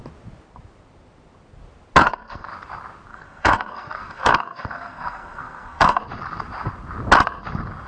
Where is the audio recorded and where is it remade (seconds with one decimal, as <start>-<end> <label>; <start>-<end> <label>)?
0.0-2.0 recorded; 2.0-2.5 remade; 2.5-3.1 recorded; 3.1-6.0 remade; 6.0-7.9 recorded